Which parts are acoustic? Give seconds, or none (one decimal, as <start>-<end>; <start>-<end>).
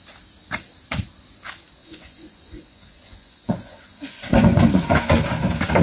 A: 0.0-1.8; 5.0-5.8